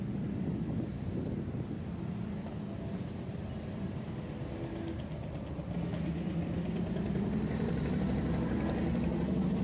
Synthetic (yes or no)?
yes